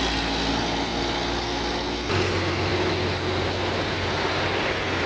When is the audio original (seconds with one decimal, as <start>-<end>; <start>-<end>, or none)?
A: 0.0-5.1